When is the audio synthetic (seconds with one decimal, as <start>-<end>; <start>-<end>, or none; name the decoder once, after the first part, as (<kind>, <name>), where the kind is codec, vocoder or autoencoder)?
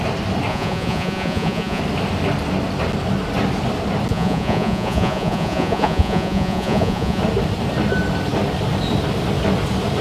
0.5-1.8 (vocoder, Vocos); 4.1-7.2